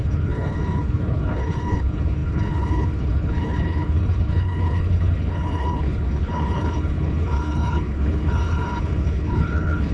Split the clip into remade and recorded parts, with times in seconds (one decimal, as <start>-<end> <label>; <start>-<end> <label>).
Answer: 0.0-9.9 remade